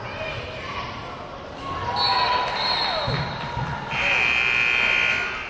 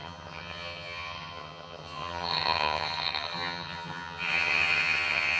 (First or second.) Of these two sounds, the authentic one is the first